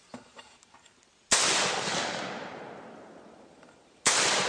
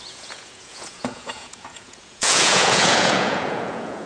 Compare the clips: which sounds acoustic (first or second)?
first